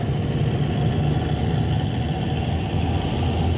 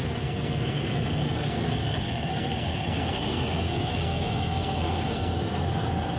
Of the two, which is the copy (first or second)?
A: second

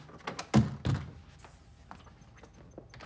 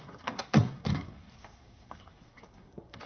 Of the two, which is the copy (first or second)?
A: second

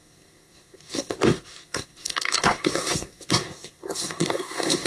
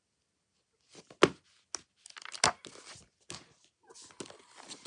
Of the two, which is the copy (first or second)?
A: first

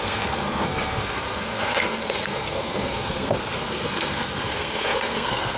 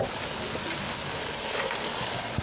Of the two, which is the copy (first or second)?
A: first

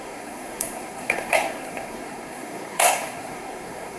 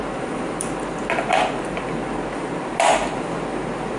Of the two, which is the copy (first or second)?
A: first